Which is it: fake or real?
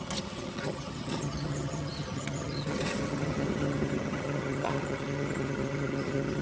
fake